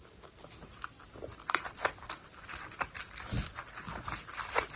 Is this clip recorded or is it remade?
recorded